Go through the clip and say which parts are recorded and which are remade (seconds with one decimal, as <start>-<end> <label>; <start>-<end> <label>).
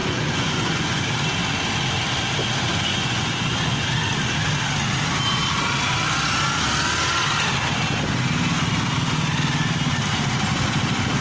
0.0-1.0 remade; 1.0-2.7 recorded; 2.7-3.9 remade; 3.9-11.2 recorded